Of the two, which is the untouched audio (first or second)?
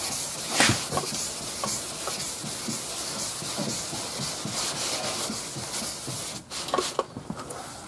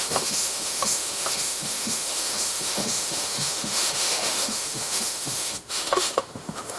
first